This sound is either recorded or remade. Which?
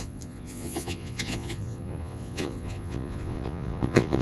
remade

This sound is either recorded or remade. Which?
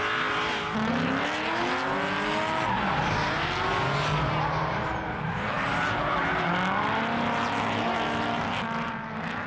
recorded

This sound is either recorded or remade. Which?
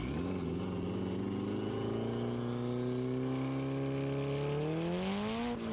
recorded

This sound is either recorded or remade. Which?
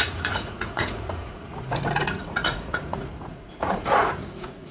remade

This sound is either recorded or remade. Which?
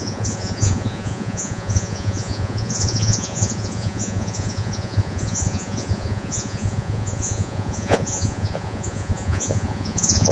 remade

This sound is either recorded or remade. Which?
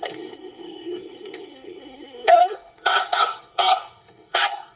remade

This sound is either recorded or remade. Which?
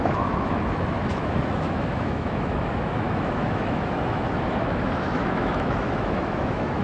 remade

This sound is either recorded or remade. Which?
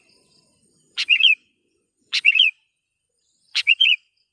remade